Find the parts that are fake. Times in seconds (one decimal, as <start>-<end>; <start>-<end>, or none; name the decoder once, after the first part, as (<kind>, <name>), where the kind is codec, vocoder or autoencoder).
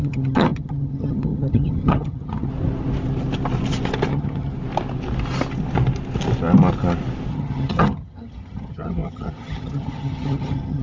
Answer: 0.0-2.5 (vocoder, HiFi-GAN); 4.1-4.5; 7.3-10.8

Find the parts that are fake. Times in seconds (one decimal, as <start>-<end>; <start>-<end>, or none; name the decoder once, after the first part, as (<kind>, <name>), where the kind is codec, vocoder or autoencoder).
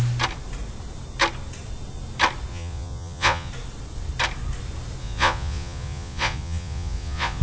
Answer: 2.5-3.5 (vocoder, Vocos); 5.0-7.4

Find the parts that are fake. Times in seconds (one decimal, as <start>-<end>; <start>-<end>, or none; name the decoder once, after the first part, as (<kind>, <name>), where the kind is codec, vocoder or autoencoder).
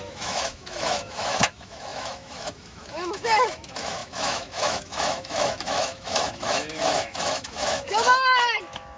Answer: 0.0-9.0 (autoencoder, DAC-VAE)